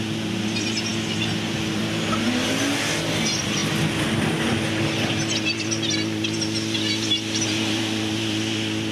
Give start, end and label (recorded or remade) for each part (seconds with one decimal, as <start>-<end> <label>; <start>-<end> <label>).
0.0-8.9 recorded